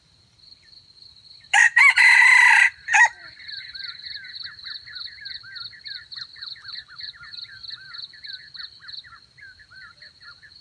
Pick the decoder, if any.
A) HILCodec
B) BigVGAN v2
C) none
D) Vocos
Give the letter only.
B